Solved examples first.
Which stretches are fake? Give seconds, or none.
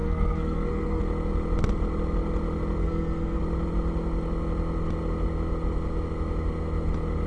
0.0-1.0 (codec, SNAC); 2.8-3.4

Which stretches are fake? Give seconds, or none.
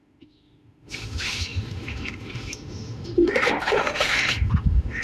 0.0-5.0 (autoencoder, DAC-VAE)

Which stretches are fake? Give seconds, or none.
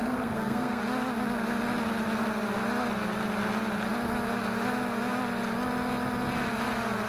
0.0-0.8 (codec, SNAC)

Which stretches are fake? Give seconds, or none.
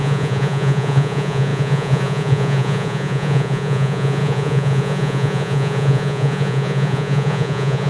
0.0-7.9 (vocoder, Vocos)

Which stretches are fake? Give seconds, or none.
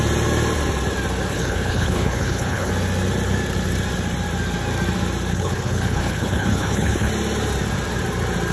1.3-2.7 (codec, HILCodec); 5.3-7.1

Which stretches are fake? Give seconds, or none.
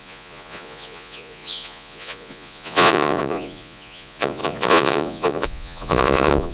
0.0-6.5 (vocoder, Vocos)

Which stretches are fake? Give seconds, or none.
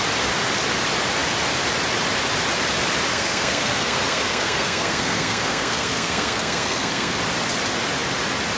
3.1-7.2 (codec, SNAC)